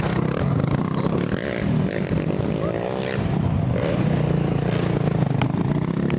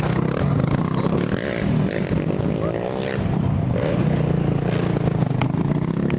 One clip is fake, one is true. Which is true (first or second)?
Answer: second